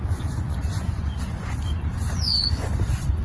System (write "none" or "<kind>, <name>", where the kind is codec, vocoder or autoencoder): vocoder, Vocos